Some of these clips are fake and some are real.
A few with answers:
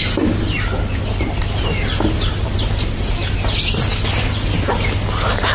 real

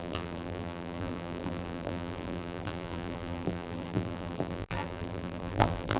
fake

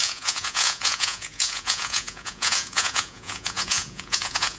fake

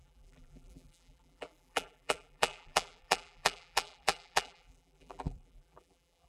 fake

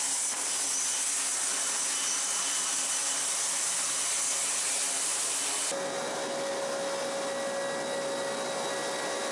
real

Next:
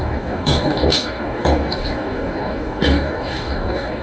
fake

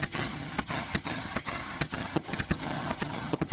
fake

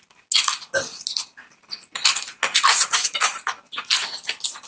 real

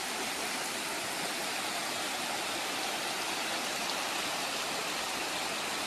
real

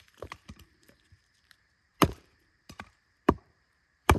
fake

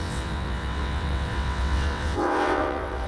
fake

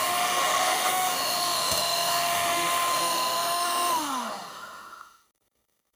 fake